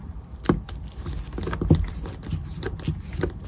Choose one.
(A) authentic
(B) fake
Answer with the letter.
A